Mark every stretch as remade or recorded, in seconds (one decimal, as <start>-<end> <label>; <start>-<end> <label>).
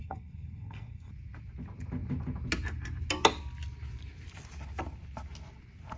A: 0.0-1.1 remade; 1.1-6.0 recorded